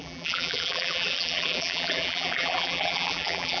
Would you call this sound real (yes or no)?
no